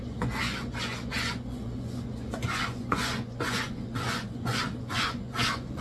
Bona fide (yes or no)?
no